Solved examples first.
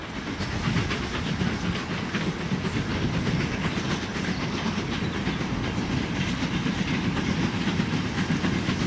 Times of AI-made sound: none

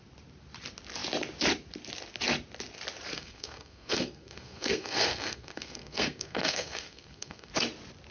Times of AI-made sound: 3.1-7.5

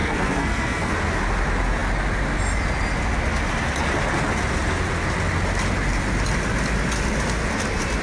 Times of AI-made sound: 0.0-0.9

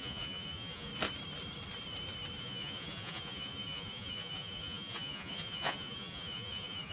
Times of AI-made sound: 0.0-0.9; 2.4-6.9

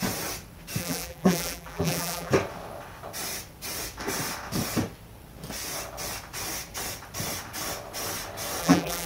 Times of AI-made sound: 0.8-2.3; 8.6-9.1